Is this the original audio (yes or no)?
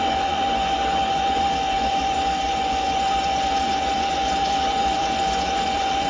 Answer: no